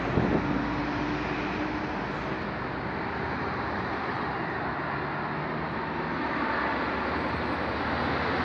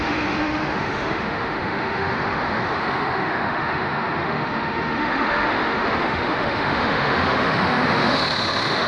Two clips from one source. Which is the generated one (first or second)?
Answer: second